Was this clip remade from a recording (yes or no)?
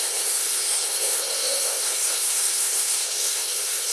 yes